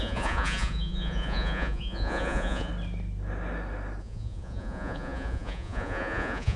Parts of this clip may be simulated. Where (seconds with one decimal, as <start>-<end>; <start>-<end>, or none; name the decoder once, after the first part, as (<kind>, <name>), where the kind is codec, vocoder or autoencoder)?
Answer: 0.0-2.7 (vocoder, Vocos); 4.0-6.6